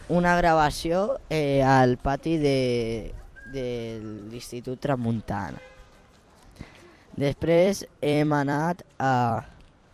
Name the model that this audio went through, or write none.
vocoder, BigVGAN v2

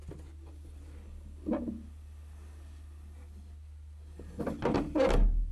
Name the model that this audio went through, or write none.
none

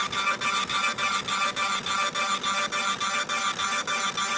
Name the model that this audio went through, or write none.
none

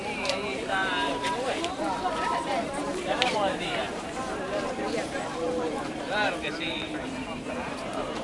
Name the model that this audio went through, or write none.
vocoder, BigVGAN v2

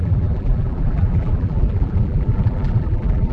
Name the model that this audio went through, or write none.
vocoder, BigVGAN v2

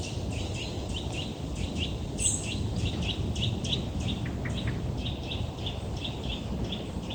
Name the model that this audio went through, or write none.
none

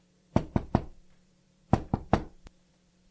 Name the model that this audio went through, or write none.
vocoder, BigVGAN v2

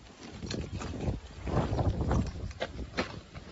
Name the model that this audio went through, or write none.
none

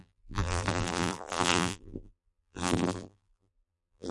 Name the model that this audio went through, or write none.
vocoder, BigVGAN v2